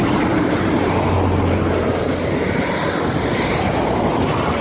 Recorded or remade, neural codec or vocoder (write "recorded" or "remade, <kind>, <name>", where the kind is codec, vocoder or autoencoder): recorded